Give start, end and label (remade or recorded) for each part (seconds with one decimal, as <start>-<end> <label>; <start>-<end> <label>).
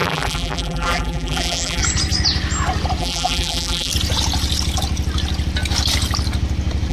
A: 0.0-1.8 remade; 1.8-3.0 recorded; 3.0-3.9 remade; 3.9-6.9 recorded